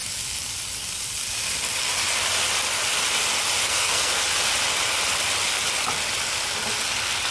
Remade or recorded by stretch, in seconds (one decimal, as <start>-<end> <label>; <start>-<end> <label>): 0.0-3.6 recorded; 3.6-4.2 remade; 4.2-7.3 recorded